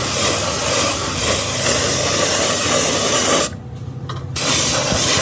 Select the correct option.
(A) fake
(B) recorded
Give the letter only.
B